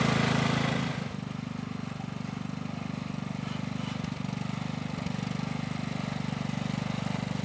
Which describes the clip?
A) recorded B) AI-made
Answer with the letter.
A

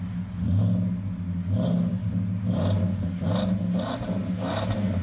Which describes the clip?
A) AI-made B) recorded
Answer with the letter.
B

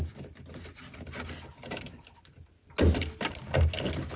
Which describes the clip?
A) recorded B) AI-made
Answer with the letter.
A